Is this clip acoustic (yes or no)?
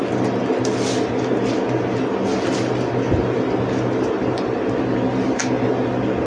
yes